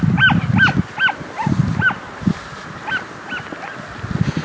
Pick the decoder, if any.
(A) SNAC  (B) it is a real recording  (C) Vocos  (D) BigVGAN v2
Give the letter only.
B